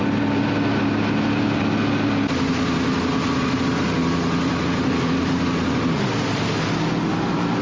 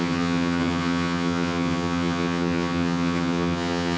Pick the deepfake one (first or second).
second